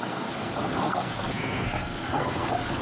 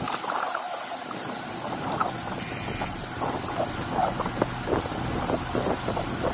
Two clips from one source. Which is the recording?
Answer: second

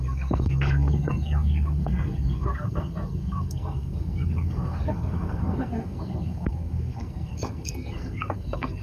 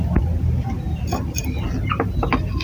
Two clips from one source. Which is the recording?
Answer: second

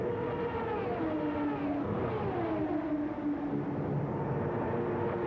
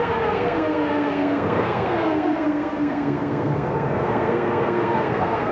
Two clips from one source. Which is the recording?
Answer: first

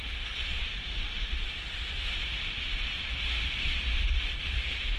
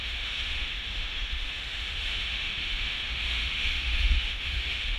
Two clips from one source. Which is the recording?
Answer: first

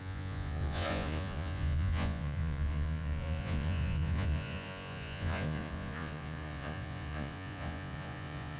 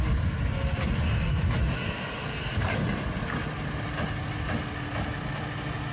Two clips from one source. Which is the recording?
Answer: second